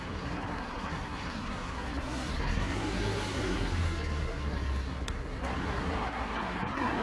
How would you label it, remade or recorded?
remade